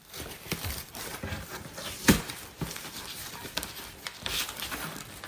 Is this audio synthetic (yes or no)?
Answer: yes